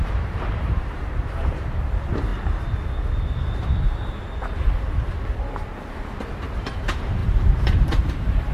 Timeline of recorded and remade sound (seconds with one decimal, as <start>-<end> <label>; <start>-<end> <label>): 0.0-2.3 remade; 2.3-6.3 recorded; 6.3-8.5 remade